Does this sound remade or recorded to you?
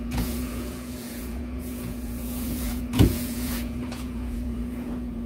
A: remade